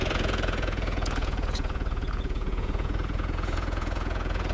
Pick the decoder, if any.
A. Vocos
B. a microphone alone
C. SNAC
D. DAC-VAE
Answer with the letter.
A